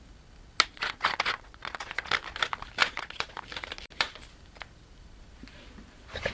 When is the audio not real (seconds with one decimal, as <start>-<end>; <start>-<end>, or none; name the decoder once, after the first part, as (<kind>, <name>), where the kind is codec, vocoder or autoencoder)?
0.7-2.1 (vocoder, Vocos); 2.8-3.4